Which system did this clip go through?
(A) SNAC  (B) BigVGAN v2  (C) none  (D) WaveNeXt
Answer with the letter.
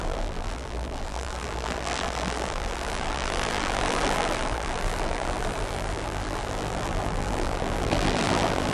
B